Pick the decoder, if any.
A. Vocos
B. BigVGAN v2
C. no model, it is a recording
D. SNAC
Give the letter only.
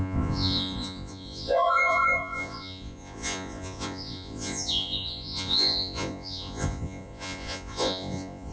A